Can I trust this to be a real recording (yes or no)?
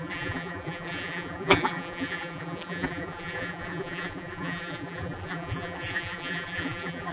no